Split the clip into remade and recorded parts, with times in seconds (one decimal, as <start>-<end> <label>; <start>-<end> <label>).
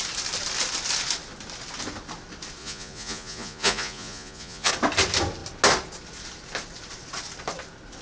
0.0-2.6 recorded; 2.6-4.7 remade; 4.7-8.0 recorded